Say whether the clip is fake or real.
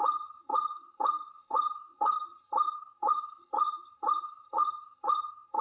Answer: fake